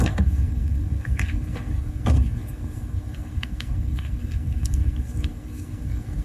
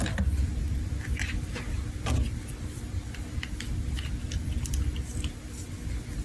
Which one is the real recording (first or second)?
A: second